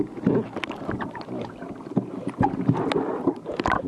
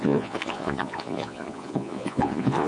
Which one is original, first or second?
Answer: first